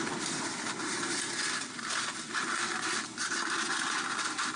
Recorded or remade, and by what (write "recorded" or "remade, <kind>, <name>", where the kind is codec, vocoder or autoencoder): recorded